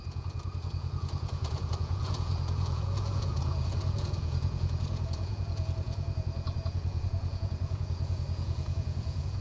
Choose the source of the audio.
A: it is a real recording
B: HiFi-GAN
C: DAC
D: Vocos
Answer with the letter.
D